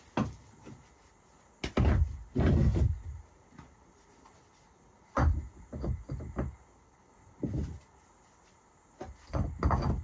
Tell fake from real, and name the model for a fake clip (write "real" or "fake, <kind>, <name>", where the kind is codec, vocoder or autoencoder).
real